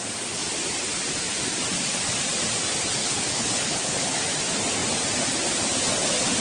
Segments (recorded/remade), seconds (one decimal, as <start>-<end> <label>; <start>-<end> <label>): 0.0-3.0 recorded; 3.0-4.2 remade; 4.2-6.4 recorded

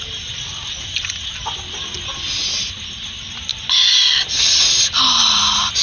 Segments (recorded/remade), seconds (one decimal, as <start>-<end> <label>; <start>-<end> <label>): 0.0-5.8 recorded

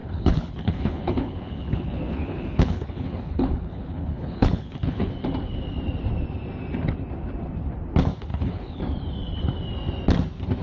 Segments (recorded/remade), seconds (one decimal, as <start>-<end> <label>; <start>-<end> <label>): 0.0-5.1 remade; 5.1-8.3 recorded; 8.3-8.8 remade; 8.8-10.6 recorded

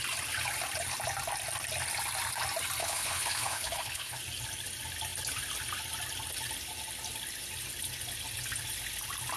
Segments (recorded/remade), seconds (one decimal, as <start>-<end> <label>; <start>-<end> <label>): 0.0-2.8 recorded; 2.8-4.2 remade; 4.2-9.4 recorded